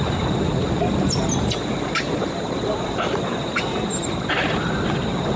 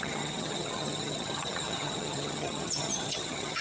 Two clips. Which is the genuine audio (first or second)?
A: first